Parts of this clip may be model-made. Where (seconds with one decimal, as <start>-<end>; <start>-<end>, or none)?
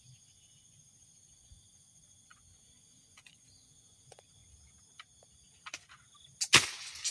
0.0-4.4